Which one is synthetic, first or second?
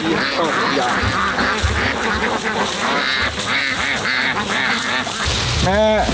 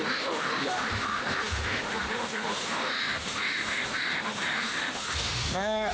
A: second